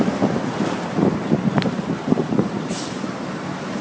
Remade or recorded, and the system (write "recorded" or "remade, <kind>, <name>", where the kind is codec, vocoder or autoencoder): remade, vocoder, BigVGAN v2